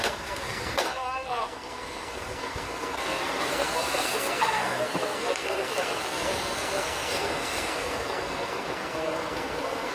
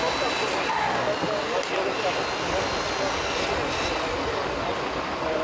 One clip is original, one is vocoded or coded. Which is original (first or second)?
second